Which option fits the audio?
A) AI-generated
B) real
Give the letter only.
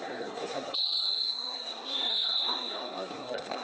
A